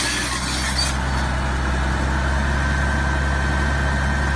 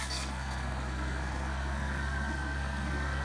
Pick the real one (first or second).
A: first